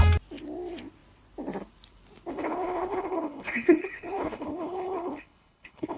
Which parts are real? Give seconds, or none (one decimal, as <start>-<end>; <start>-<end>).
0.0-2.3